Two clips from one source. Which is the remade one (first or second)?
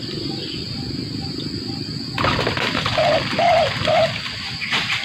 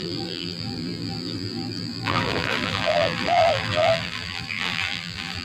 second